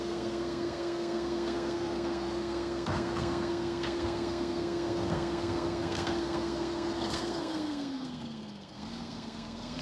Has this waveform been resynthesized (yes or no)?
yes